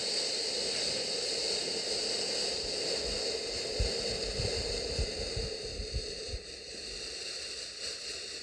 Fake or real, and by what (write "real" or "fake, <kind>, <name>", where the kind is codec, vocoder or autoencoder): real